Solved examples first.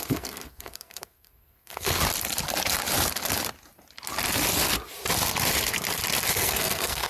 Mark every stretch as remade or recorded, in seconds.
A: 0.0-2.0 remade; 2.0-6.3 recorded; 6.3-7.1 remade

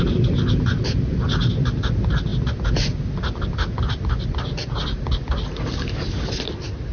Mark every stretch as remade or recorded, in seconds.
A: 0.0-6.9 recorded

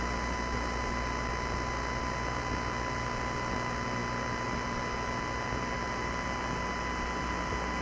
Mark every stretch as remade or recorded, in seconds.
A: 0.0-7.8 recorded